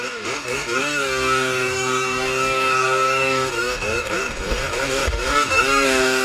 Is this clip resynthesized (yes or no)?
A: yes